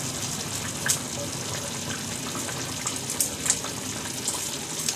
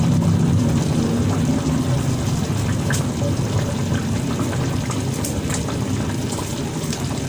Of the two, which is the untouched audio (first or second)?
first